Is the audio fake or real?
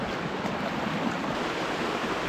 real